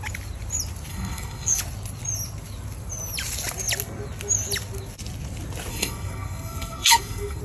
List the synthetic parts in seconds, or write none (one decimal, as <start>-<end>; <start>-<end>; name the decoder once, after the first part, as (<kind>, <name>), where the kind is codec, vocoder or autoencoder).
0.9-1.6 (codec, SNAC); 5.7-7.4